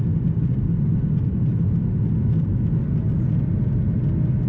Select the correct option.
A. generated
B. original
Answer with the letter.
B